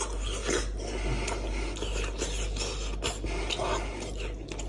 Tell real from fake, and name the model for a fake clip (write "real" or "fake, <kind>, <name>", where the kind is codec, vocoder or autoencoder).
real